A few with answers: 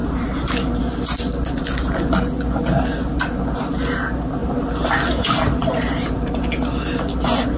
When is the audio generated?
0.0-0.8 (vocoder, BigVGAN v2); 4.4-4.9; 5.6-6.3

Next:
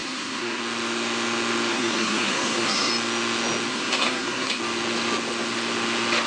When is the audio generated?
0.0-0.6 (codec, SNAC); 1.7-2.9; 3.7-4.6